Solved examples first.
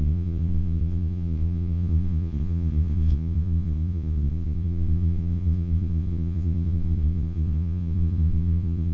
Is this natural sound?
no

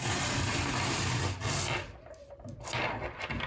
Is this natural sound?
yes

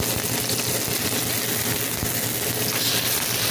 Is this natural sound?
yes